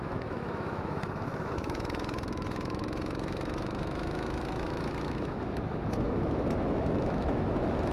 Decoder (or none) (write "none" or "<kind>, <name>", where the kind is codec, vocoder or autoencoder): autoencoder, DAC-VAE